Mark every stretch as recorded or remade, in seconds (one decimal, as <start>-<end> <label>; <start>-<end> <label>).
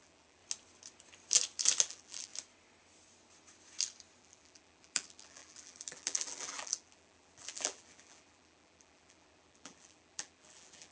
0.0-0.4 remade; 0.4-1.8 recorded; 1.8-2.3 remade; 2.3-4.2 recorded; 4.2-10.9 remade